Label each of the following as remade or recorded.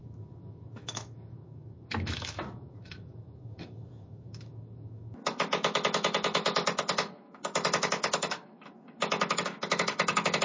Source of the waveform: remade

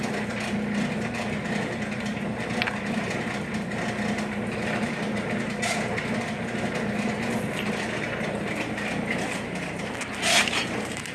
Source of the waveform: recorded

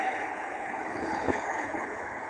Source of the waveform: remade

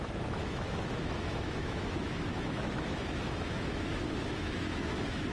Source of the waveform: remade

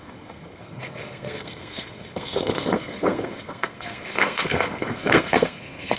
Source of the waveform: remade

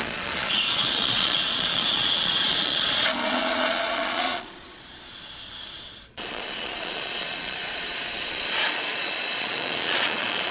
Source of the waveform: remade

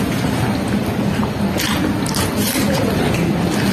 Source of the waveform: recorded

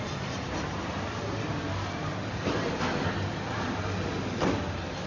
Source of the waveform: recorded